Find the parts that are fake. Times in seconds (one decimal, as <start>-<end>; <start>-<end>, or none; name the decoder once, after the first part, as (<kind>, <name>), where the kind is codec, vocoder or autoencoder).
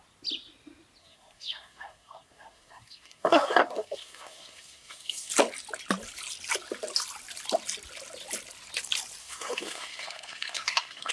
1.0-5.3 (codec, SNAC); 9.2-11.1